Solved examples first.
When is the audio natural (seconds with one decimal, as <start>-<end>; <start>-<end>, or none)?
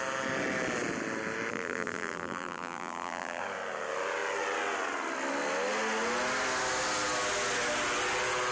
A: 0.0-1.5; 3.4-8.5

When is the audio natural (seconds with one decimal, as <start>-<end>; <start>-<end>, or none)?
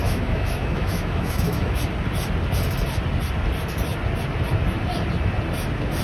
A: 1.8-6.0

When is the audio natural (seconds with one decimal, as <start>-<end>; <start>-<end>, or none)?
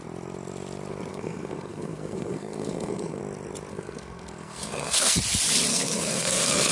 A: 0.0-1.1; 3.2-3.7; 5.2-5.7